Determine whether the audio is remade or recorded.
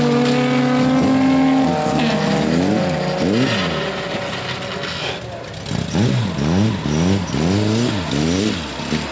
recorded